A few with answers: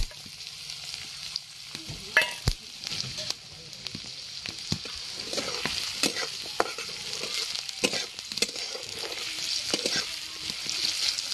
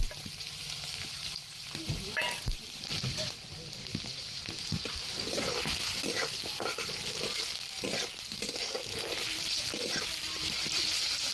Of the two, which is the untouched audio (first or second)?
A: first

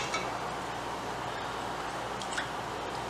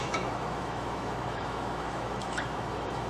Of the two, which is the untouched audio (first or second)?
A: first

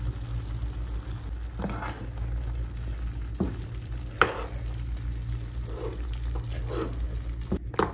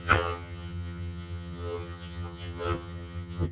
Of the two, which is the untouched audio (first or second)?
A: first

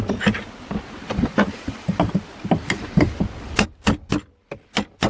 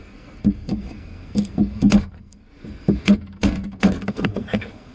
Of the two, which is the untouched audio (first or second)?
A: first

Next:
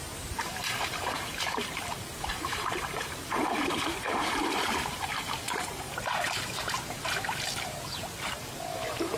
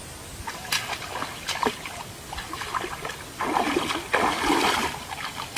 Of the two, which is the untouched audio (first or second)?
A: second